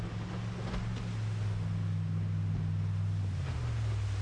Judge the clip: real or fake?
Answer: real